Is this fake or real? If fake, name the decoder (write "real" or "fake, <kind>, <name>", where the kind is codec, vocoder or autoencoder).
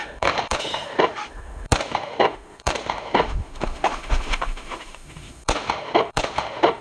fake, autoencoder, DAC-VAE